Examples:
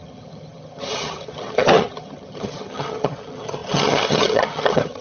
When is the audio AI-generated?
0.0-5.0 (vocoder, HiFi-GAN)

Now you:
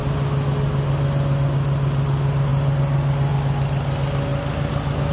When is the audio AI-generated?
none